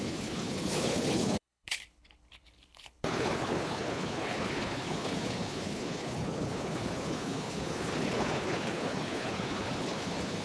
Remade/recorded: remade